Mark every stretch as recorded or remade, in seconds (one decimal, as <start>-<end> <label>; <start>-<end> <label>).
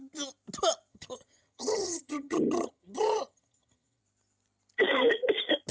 0.0-0.9 recorded; 0.9-4.0 remade; 4.0-5.7 recorded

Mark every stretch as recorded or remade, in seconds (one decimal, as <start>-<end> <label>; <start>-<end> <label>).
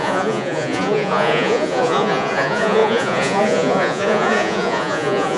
0.0-5.4 remade